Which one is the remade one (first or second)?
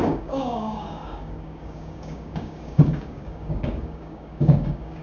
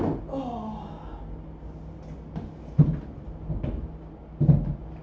first